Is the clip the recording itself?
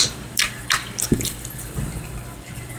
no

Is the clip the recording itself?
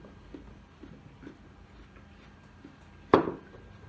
yes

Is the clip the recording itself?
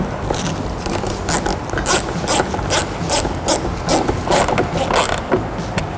yes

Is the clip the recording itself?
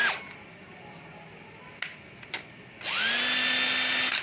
yes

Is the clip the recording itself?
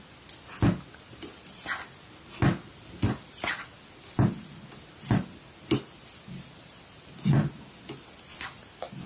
yes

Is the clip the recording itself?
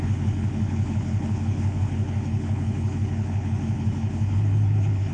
no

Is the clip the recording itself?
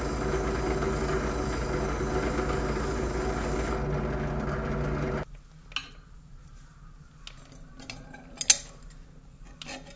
yes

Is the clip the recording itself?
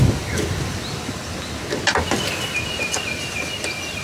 yes